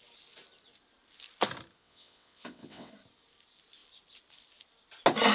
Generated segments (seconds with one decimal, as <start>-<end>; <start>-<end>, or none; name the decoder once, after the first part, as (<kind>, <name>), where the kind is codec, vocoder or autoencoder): 1.8-2.9 (vocoder, WaveNeXt)

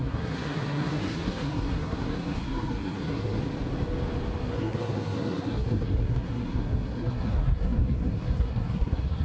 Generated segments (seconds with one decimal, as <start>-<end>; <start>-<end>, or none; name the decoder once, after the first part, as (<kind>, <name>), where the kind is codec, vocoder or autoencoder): 0.0-3.4 (codec, SNAC); 4.4-9.2

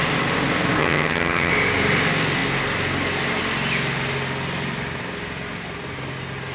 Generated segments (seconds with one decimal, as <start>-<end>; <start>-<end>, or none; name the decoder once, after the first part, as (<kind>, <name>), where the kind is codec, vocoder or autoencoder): 0.8-1.5 (vocoder, HiFi-GAN)

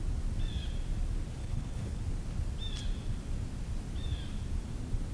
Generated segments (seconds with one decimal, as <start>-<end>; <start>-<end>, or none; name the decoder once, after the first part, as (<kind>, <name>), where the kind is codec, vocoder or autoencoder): 1.4-2.0 (codec, HILCodec)